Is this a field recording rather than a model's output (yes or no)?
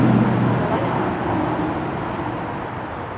yes